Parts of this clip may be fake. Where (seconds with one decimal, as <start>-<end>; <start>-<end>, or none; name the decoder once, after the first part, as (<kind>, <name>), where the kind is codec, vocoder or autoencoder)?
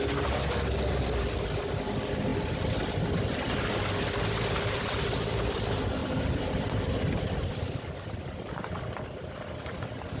none